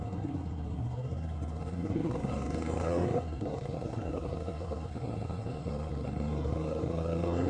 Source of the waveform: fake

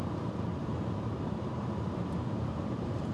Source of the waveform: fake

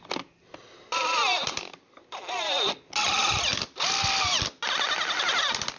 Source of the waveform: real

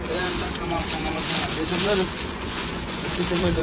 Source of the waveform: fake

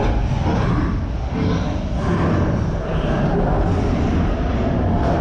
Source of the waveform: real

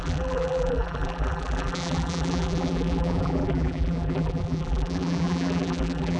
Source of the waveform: fake